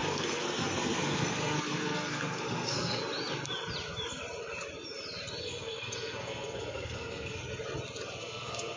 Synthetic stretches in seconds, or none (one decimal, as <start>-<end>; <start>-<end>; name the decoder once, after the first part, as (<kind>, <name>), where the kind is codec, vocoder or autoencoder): 0.0-3.0 (codec, SNAC); 5.4-7.4; 8.2-8.8